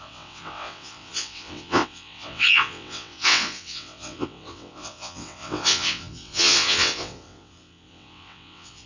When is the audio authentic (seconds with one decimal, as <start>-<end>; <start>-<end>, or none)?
none